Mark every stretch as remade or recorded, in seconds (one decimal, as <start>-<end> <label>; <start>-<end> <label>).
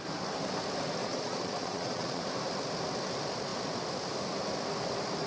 0.0-1.0 recorded; 1.0-2.2 remade; 2.2-5.3 recorded